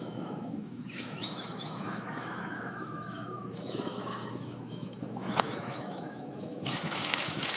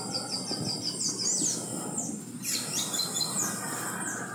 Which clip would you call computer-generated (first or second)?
first